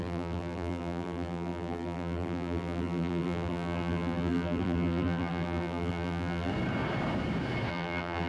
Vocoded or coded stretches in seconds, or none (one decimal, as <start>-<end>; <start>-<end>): 0.0-6.5; 7.7-8.3